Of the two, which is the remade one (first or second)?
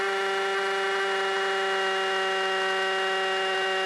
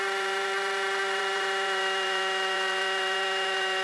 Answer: second